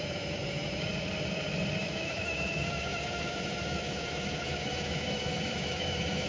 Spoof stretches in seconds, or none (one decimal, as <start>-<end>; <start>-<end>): 0.0-0.9; 1.8-6.3